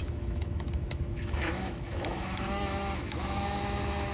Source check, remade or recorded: remade